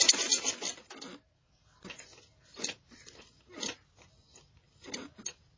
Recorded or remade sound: recorded